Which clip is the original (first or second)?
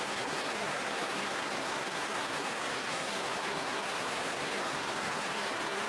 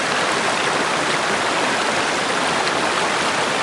second